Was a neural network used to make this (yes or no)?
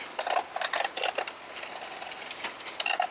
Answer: no